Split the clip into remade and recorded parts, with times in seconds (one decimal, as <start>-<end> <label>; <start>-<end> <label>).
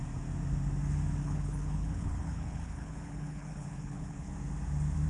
0.0-1.2 recorded; 1.2-4.3 remade; 4.3-5.1 recorded